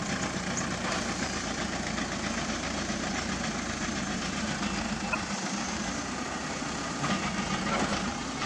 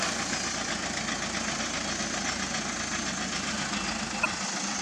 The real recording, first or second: second